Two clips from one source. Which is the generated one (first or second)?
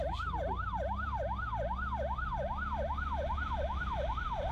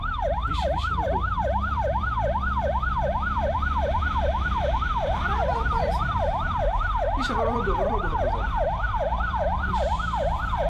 second